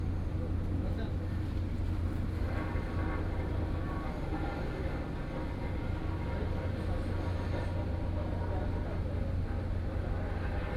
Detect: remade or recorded recorded